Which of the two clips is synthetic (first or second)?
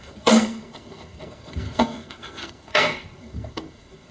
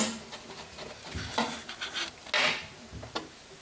first